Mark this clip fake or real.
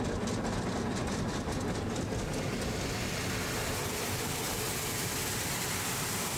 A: real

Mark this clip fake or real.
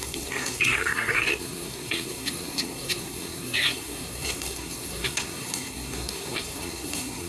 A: fake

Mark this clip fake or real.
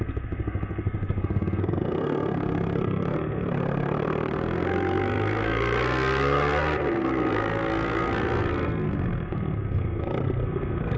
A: fake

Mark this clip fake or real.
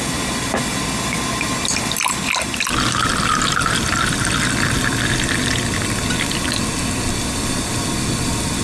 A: real